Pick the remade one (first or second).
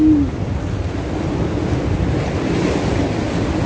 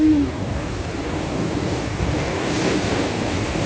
second